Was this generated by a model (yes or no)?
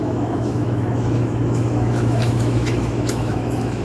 yes